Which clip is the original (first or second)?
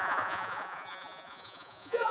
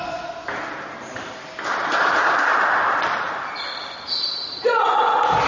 second